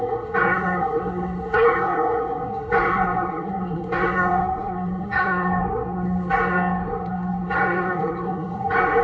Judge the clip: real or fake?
fake